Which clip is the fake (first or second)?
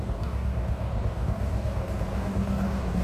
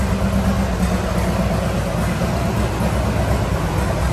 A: first